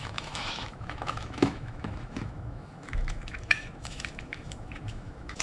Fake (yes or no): yes